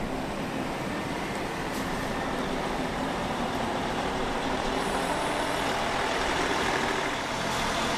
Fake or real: fake